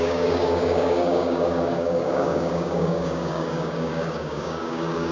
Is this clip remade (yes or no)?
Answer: yes